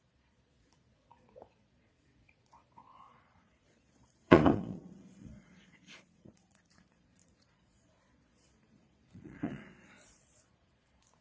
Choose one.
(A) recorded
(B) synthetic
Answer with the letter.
B